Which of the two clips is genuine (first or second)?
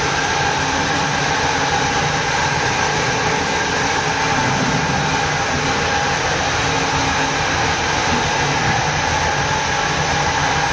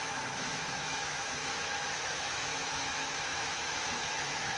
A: first